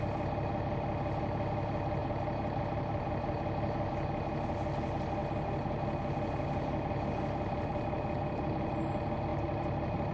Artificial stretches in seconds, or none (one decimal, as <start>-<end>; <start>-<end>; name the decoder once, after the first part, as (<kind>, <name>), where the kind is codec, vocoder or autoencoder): 2.0-2.6 (vocoder, BigVGAN v2); 7.7-8.7; 9.3-10.1